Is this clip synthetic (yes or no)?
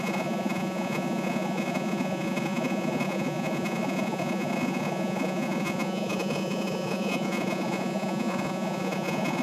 yes